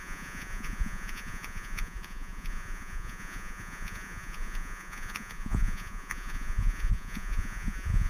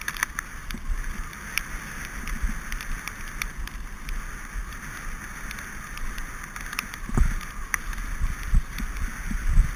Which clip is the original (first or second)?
second